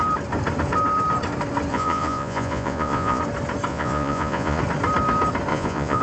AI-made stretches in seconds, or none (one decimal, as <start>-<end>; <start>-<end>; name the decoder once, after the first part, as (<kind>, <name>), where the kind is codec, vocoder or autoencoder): 1.7-3.2 (vocoder, Vocos); 3.7-4.6; 5.5-6.0